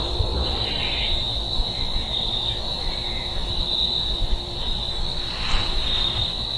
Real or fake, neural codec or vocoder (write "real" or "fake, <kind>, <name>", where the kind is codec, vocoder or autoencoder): fake, vocoder, BigVGAN v2